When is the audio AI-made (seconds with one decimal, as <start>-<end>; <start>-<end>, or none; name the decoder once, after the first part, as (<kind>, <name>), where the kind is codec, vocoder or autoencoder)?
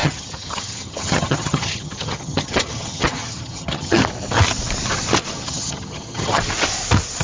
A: 0.0-4.0 (vocoder, HiFi-GAN); 5.3-6.4